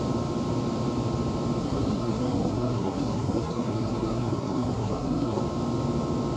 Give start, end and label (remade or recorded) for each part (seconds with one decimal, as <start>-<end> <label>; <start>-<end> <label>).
0.0-1.6 recorded; 1.6-5.4 remade; 5.4-6.4 recorded